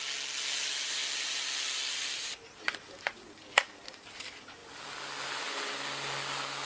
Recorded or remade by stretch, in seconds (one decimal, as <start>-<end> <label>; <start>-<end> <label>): 0.0-6.7 recorded